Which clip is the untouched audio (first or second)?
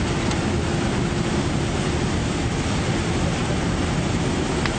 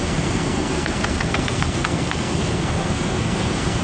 first